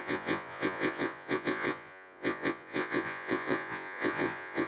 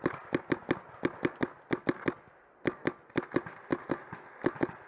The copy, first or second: first